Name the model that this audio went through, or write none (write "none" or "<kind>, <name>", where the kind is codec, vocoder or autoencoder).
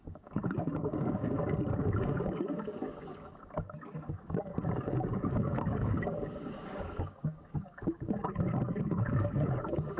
codec, DAC